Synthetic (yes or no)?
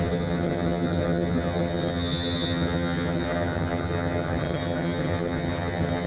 yes